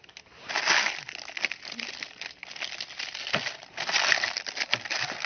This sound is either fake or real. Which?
real